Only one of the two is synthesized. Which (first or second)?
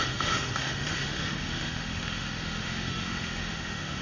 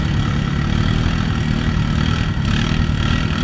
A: first